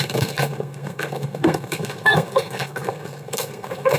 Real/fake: fake